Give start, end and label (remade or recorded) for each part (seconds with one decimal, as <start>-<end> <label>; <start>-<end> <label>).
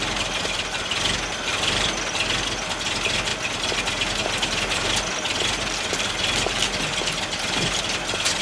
0.0-8.4 recorded